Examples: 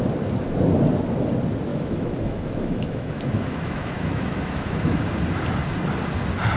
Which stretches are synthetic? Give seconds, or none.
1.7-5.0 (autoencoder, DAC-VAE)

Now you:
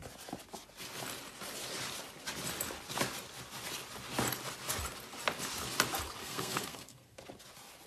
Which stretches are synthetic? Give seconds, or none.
6.2-7.2 (codec, SNAC)

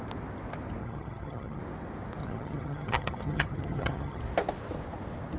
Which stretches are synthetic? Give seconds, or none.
0.8-1.6 (vocoder, HiFi-GAN); 2.2-4.2

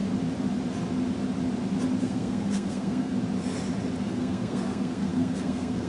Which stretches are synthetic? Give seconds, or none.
2.0-3.1 (codec, SNAC); 4.0-5.9

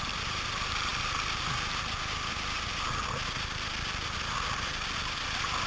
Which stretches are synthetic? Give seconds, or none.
none

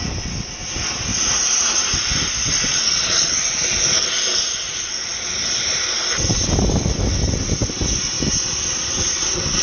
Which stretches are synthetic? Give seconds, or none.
2.7-3.3 (vocoder, Vocos)

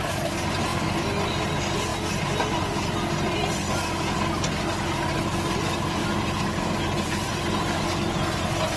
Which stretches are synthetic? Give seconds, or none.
none